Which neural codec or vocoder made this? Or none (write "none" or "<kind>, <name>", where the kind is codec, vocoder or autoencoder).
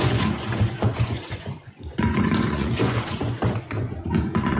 vocoder, Vocos